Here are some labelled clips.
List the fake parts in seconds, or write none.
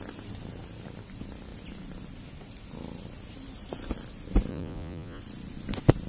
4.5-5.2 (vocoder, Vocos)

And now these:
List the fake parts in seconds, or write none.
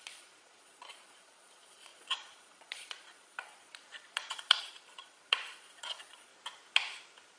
0.0-6.3 (vocoder, Vocos)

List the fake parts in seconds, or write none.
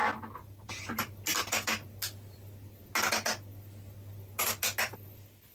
none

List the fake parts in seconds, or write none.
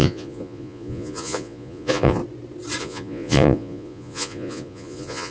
0.0-2.2 (vocoder, Vocos); 2.8-5.3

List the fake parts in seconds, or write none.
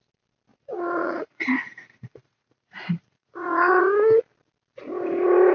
0.5-3.8 (vocoder, Vocos)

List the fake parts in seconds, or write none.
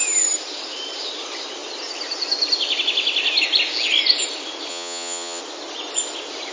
4.7-5.4 (vocoder, Vocos)